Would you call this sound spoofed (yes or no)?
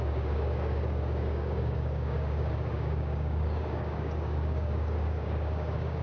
yes